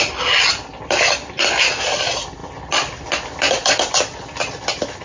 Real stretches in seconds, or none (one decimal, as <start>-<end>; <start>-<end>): 0.0-5.0